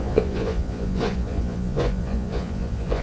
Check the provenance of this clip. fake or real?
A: fake